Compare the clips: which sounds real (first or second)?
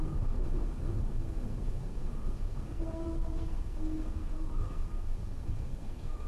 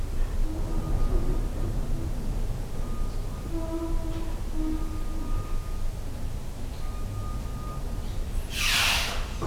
second